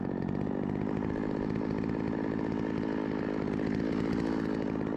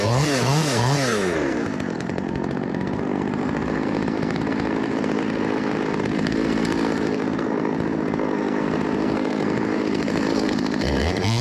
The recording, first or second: first